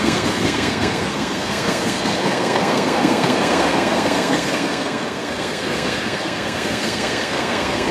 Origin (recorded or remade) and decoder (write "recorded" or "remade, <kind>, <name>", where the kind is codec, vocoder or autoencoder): remade, codec, SNAC